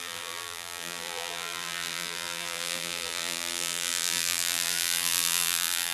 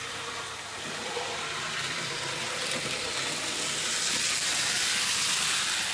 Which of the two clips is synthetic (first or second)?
first